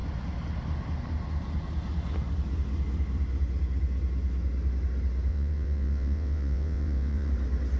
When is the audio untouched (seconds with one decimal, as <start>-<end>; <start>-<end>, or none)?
0.0-5.3; 7.3-7.8